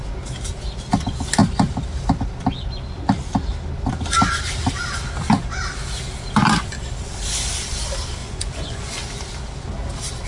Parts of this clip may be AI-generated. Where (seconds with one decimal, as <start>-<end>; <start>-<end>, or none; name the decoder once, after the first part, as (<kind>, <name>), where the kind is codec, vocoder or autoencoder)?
8.2-9.0 (vocoder, Vocos)